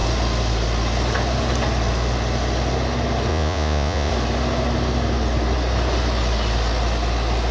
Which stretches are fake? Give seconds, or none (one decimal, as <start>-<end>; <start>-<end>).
3.3-4.1